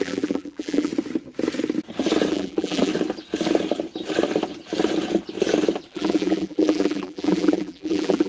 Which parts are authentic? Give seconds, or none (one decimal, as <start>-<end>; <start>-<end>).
0.9-2.3; 2.9-5.9